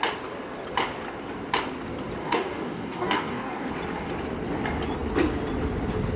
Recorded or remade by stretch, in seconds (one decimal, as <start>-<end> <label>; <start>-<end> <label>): 0.0-2.2 recorded; 2.2-3.7 remade; 3.7-6.2 recorded